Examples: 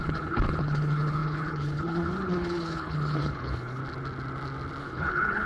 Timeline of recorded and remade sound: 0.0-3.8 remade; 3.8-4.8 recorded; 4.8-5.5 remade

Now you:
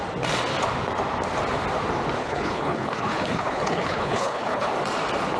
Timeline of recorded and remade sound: 0.0-2.2 recorded; 2.2-4.7 remade; 4.7-5.4 recorded

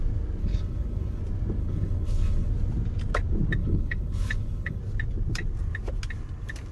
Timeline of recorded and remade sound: 0.0-0.4 recorded; 0.4-1.2 remade; 1.2-1.6 recorded; 1.6-2.5 remade; 2.5-3.6 recorded; 3.6-4.8 remade; 4.8-6.7 recorded